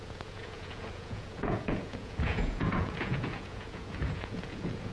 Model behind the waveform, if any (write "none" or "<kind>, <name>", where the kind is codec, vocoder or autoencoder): vocoder, Vocos